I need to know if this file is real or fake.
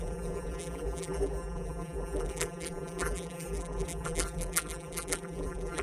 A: fake